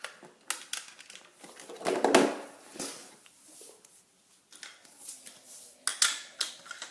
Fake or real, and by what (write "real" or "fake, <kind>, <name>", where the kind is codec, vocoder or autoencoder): real